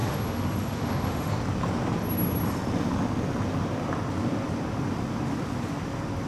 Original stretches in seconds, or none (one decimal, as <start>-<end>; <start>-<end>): 1.3-6.3